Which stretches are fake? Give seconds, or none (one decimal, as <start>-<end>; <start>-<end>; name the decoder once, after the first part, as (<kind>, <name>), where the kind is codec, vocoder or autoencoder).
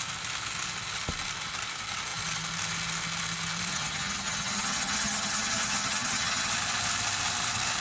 3.7-6.5 (vocoder, HiFi-GAN)